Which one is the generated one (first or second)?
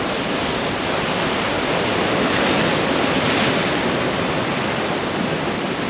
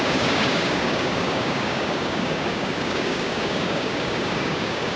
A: second